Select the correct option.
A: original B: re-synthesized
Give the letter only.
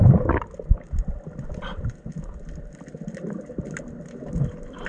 A